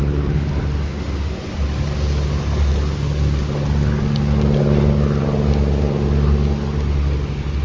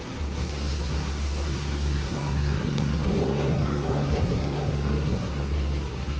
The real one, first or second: first